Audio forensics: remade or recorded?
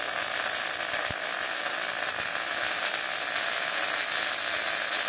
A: recorded